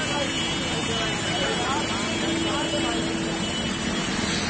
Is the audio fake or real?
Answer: real